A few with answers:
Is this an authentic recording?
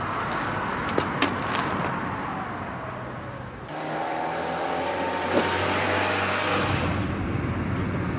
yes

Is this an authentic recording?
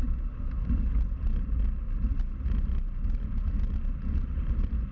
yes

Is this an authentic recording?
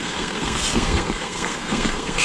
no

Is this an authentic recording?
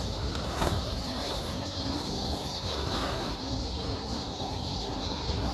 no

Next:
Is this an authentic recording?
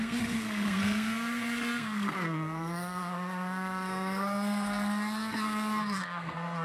no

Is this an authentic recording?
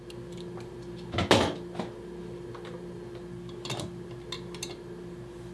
yes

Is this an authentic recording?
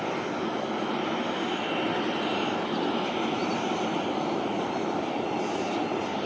yes